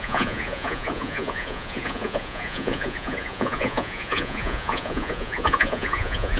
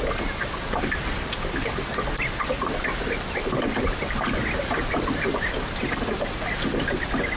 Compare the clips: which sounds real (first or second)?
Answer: second